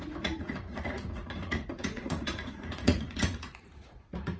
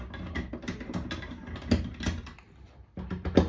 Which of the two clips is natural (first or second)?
second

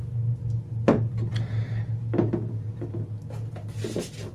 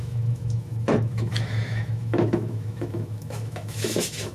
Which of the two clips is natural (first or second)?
first